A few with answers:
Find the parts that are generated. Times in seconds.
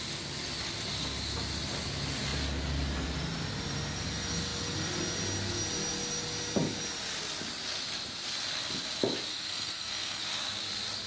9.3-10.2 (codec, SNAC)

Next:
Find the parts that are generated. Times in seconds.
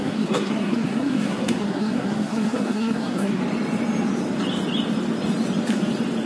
0.0-3.4 (codec, SNAC)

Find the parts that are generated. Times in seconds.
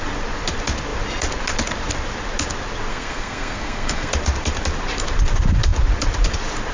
2.9-4.1 (codec, SNAC)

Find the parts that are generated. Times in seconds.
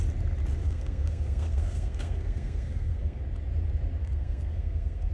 0.6-3.2 (codec, SNAC); 4.0-5.1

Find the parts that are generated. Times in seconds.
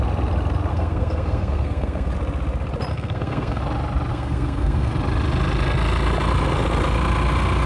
0.7-2.1 (codec, SNAC); 2.9-3.6; 4.1-4.9